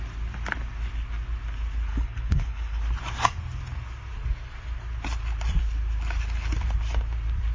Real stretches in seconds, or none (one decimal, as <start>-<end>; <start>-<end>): 0.0-1.9; 2.8-7.5